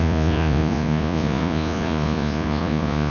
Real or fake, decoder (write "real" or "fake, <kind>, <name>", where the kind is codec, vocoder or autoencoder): fake, vocoder, Vocos